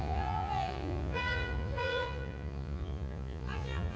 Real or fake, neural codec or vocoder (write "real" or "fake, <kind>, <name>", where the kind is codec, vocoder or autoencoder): fake, vocoder, Vocos